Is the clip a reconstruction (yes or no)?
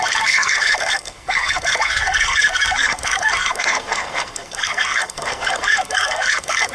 yes